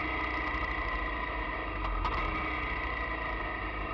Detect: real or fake real